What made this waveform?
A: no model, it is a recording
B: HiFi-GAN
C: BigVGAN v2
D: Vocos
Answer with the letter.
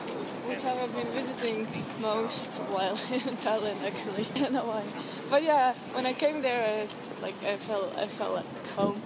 A